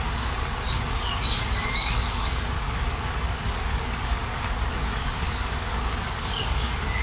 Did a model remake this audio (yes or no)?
yes